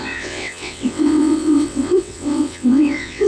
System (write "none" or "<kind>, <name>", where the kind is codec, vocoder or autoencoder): vocoder, WaveNeXt